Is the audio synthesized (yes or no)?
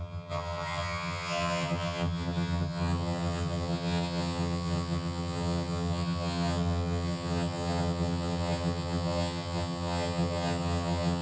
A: yes